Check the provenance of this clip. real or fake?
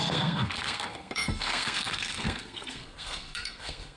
fake